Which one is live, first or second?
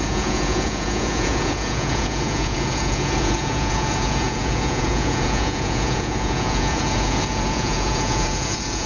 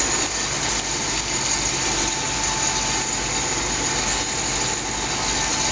second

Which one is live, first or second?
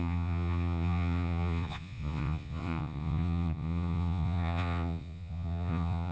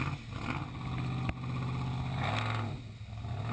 second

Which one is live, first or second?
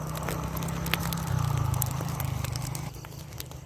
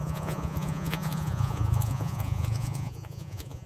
first